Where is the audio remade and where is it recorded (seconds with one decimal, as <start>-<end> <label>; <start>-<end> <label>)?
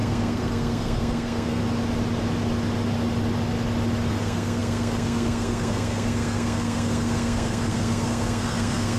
0.0-1.6 remade; 1.6-4.1 recorded; 4.1-9.0 remade